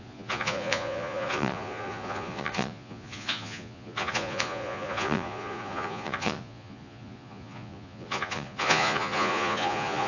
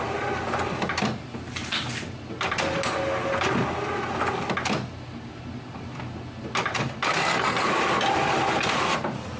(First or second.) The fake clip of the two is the first